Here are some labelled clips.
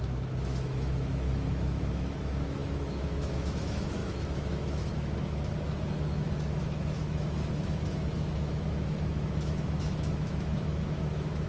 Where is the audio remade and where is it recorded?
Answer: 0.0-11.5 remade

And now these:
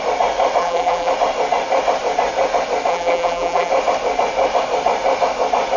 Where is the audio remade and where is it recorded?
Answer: 0.0-0.6 recorded; 0.6-1.1 remade; 1.1-2.9 recorded; 2.9-3.7 remade; 3.7-5.8 recorded

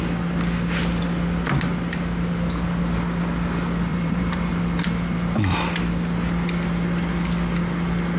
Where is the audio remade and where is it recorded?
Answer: 0.0-3.9 recorded; 3.9-4.5 remade; 4.5-8.2 recorded

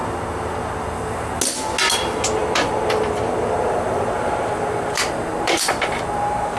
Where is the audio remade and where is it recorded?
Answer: 0.0-2.4 recorded; 2.4-6.6 remade

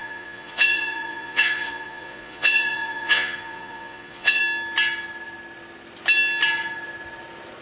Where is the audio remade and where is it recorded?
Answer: 0.0-4.4 remade; 4.4-7.6 recorded

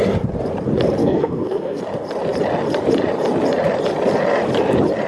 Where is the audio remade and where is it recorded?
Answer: 0.0-1.0 recorded; 1.0-1.8 remade; 1.8-5.1 recorded

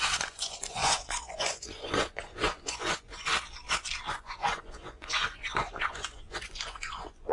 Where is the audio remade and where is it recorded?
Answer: 0.0-3.3 remade; 3.3-4.1 recorded; 4.1-7.3 remade

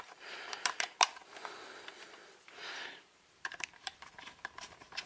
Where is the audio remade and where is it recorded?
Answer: 0.0-1.2 remade; 1.2-2.5 recorded; 2.5-5.1 remade